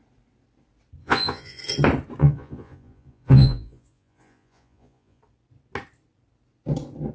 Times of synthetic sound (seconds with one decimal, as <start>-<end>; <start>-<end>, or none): 1.0-1.6; 2.2-5.2